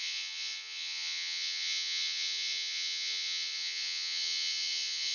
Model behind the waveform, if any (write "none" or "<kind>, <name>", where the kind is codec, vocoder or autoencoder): vocoder, Vocos